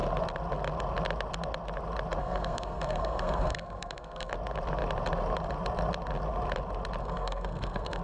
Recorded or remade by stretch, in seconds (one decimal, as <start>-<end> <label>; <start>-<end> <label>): 0.0-2.2 recorded; 2.2-4.3 remade; 4.3-7.0 recorded; 7.0-8.0 remade